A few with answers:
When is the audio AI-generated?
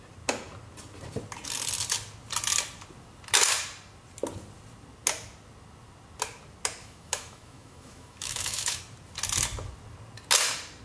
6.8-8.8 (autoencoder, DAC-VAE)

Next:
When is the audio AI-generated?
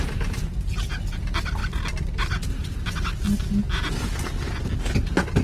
none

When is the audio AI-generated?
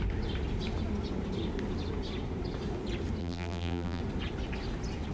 3.2-4.0 (vocoder, BigVGAN v2)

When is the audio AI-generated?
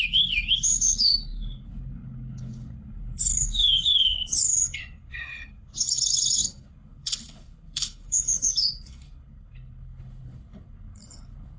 0.0-11.6 (codec, HILCodec)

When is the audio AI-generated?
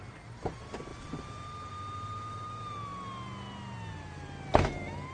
none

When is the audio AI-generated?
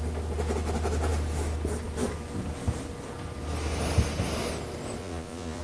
5.0-5.6 (vocoder, Vocos)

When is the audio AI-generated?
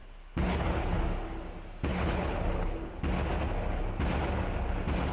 0.0-1.0 (codec, HILCodec); 1.9-2.9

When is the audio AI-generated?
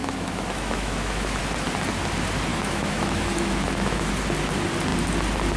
0.0-1.4 (autoencoder, DAC-VAE); 2.5-4.1